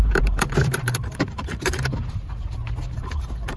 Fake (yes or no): yes